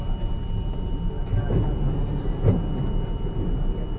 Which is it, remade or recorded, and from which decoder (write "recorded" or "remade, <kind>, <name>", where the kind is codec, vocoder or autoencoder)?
recorded